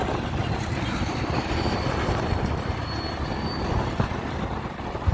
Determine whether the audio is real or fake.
real